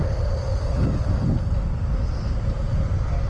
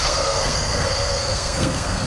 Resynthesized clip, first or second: second